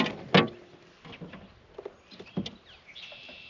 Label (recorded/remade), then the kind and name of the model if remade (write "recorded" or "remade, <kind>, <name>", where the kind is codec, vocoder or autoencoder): recorded